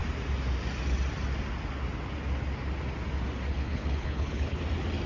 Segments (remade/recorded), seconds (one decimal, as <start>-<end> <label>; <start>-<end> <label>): 0.0-3.5 recorded; 3.5-4.6 remade; 4.6-5.1 recorded